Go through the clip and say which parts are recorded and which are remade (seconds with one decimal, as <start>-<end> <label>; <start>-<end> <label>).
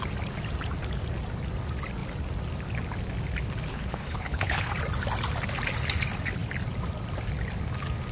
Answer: 0.0-3.7 recorded; 3.7-4.7 remade; 4.7-8.1 recorded